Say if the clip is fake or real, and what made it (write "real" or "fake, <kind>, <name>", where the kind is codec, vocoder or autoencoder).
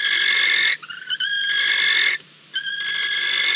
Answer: real